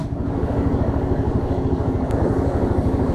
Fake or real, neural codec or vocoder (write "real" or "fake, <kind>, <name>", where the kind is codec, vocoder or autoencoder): fake, codec, DAC